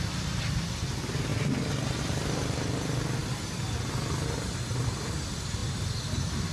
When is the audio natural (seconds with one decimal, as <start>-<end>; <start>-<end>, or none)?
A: 0.0-6.5